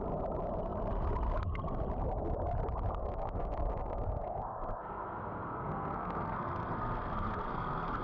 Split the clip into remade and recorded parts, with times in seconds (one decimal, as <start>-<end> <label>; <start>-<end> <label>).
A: 0.0-3.0 recorded; 3.0-8.0 remade